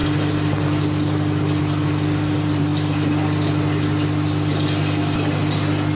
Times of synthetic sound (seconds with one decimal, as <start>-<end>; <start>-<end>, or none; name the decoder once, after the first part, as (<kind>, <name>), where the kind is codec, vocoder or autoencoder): none